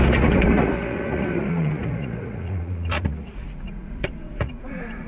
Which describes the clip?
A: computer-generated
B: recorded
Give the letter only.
A